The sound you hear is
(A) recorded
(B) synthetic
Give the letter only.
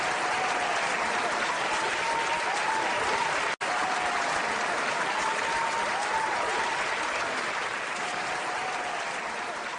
A